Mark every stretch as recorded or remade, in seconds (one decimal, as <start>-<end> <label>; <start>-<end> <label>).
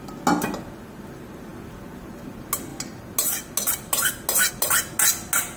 0.0-5.6 recorded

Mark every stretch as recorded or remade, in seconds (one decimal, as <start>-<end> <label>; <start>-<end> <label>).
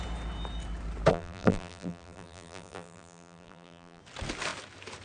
0.0-1.1 recorded; 1.1-4.0 remade; 4.0-5.0 recorded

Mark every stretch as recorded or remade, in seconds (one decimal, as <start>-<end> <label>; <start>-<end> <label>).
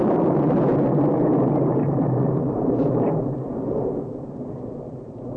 0.0-5.4 remade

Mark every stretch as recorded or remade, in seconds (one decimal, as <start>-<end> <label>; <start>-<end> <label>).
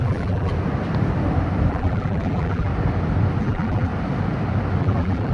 0.0-0.5 remade; 0.5-1.7 recorded; 1.7-2.7 remade; 2.7-3.4 recorded; 3.4-3.9 remade; 3.9-4.8 recorded; 4.8-5.3 remade